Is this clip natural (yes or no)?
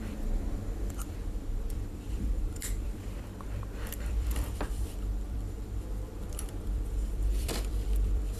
no